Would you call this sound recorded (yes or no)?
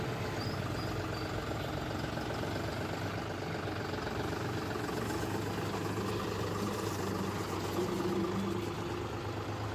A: yes